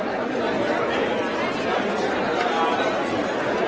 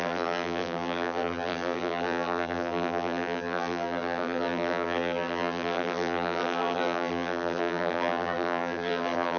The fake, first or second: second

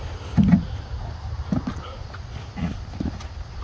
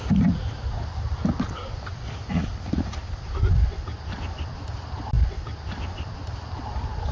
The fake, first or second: second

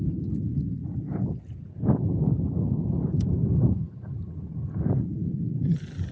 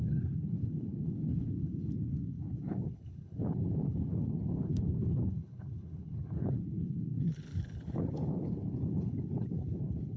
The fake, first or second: second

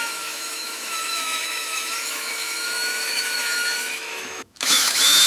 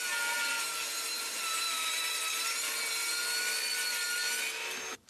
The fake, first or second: first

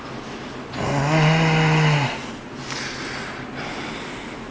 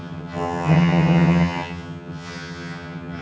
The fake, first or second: second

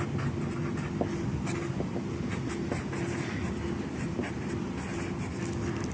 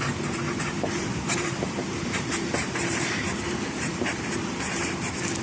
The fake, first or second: second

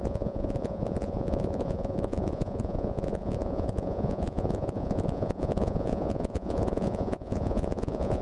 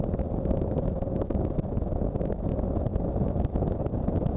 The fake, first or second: first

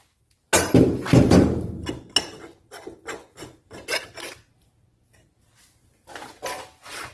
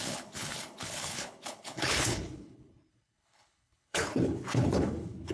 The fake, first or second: second